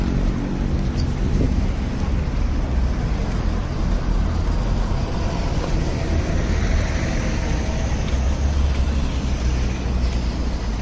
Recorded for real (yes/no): yes